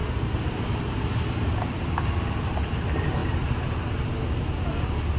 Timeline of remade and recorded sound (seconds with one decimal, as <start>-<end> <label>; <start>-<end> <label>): 0.0-1.2 remade; 1.2-5.2 recorded